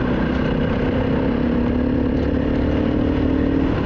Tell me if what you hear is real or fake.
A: real